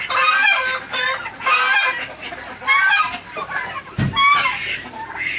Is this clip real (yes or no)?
yes